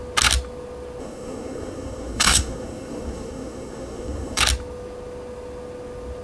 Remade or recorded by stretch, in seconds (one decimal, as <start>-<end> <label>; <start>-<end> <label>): 0.0-1.0 recorded; 1.0-4.4 remade; 4.4-6.2 recorded